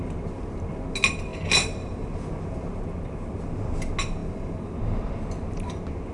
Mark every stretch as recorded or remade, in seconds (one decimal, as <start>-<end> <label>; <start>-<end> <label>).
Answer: 0.0-6.1 recorded